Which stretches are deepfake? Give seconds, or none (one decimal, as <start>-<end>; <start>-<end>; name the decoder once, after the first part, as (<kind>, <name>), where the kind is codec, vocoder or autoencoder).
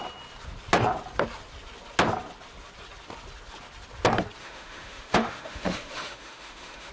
4.4-6.9 (autoencoder, DAC-VAE)